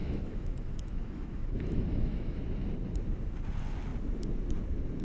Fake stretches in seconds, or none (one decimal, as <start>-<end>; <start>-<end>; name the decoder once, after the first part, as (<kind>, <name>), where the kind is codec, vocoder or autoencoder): 0.0-2.4 (autoencoder, DAC-VAE)

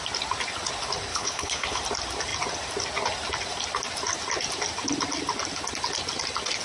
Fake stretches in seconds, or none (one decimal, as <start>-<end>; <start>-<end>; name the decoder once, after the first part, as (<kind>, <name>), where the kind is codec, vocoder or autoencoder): 1.1-1.8 (codec, HILCodec)